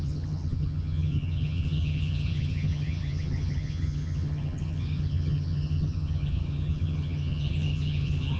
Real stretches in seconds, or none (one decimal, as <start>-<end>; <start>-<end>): none